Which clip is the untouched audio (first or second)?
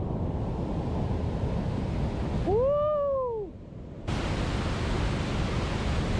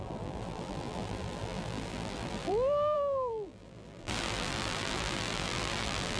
first